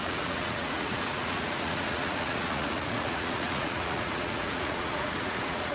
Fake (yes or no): yes